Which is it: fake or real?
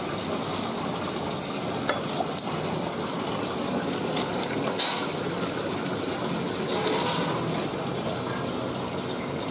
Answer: real